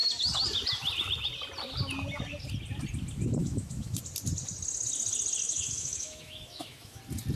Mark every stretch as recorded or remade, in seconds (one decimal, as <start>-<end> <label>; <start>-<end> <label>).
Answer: 0.0-3.4 recorded; 3.4-4.0 remade; 4.0-5.4 recorded; 5.4-7.0 remade; 7.0-7.4 recorded

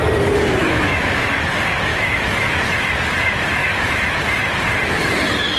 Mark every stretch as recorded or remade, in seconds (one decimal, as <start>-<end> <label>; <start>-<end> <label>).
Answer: 0.0-0.6 recorded; 0.6-1.3 remade; 1.3-1.9 recorded; 1.9-2.5 remade; 2.5-3.6 recorded; 3.6-4.2 remade; 4.2-5.6 recorded